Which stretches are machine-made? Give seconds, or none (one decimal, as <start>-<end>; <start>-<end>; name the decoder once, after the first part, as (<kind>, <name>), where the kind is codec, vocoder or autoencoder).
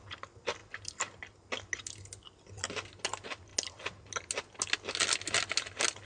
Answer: none